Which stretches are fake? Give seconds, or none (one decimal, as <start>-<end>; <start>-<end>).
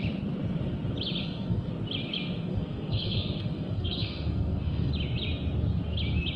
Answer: 1.2-1.7; 2.5-4.9